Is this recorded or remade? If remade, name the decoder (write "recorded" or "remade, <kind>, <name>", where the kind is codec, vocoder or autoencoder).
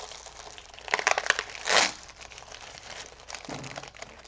remade, vocoder, BigVGAN v2